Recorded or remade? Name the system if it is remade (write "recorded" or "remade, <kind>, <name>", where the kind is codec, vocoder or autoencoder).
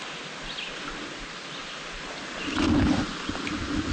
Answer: recorded